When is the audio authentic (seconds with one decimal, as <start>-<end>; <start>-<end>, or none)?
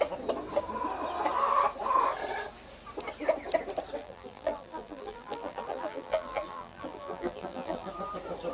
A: 0.0-4.0; 7.9-8.5